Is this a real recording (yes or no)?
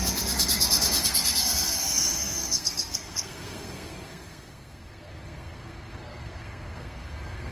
no